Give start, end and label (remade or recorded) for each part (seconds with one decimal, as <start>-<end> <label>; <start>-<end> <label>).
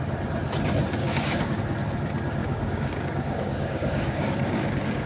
0.0-1.0 recorded; 1.0-1.6 remade; 1.6-2.4 recorded; 2.4-5.1 remade